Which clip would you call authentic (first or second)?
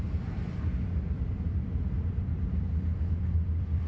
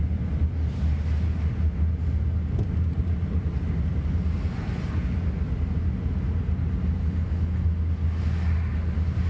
second